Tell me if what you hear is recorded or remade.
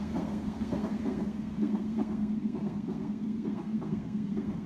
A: remade